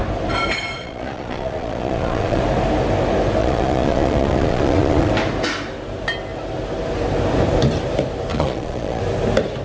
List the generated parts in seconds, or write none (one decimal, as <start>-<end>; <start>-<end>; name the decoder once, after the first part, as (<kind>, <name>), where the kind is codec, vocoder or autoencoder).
0.8-2.4 (vocoder, Vocos); 3.4-5.1; 8.3-9.0